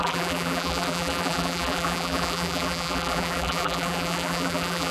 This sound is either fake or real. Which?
fake